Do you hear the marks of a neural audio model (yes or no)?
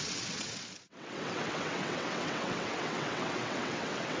yes